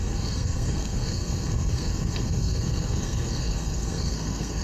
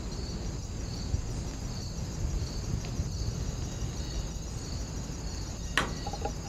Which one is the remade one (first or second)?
first